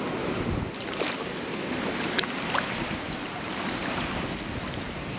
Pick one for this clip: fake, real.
fake